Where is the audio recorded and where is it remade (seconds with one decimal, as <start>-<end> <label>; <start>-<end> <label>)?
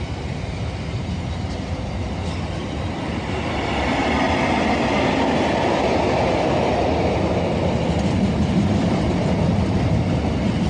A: 0.0-10.7 recorded